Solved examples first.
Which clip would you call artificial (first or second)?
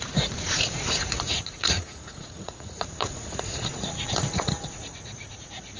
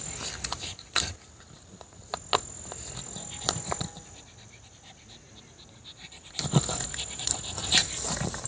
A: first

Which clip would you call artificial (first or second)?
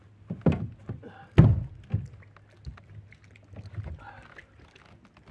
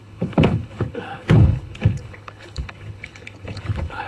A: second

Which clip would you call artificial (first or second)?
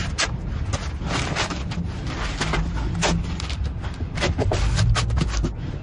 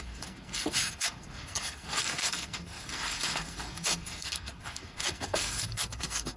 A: second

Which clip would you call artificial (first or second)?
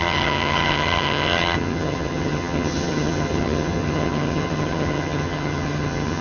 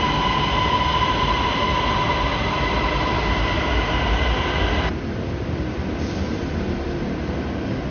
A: first